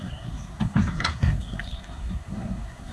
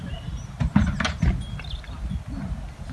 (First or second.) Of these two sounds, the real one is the second